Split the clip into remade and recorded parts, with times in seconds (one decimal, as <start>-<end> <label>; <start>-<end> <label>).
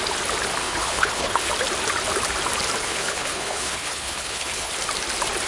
0.0-0.6 recorded; 0.6-1.5 remade; 1.5-2.8 recorded; 2.8-4.7 remade; 4.7-5.5 recorded